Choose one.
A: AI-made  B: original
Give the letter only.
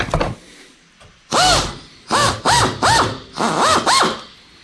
B